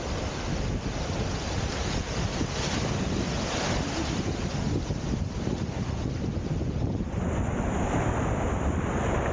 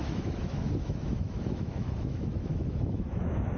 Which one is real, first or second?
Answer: first